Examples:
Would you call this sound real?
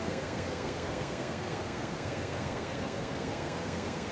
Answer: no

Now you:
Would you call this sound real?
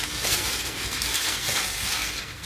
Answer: no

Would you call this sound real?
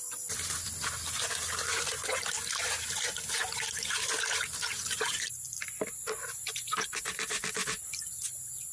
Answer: yes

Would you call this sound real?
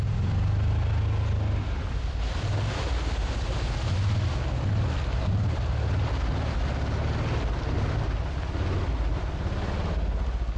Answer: yes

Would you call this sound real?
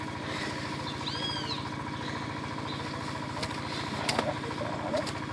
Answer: yes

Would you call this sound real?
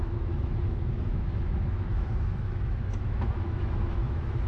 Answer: no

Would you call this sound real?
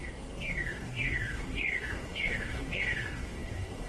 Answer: no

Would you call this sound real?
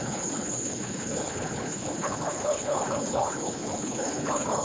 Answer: no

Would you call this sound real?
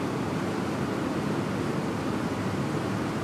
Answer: yes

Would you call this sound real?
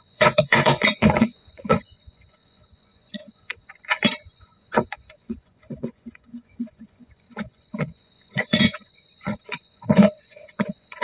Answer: no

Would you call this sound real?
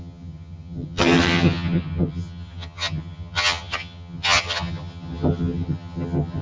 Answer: no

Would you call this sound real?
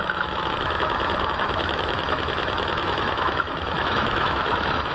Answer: no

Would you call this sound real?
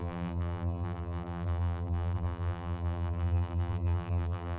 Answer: no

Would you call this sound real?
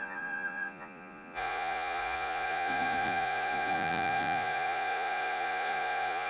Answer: no